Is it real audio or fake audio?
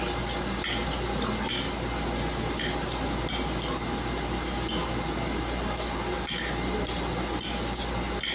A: real